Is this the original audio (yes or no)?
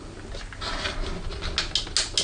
yes